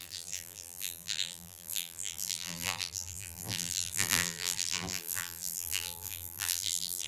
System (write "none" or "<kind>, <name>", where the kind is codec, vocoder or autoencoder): vocoder, BigVGAN v2